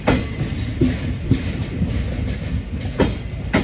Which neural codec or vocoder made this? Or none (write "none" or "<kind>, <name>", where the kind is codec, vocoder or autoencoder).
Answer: none